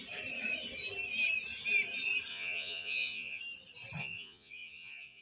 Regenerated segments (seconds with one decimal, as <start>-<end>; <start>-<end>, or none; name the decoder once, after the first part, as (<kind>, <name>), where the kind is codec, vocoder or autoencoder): 2.3-3.4 (vocoder, Vocos); 4.0-5.2